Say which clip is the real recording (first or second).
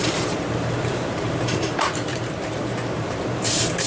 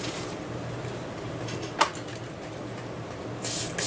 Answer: second